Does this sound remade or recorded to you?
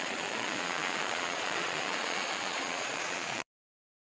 remade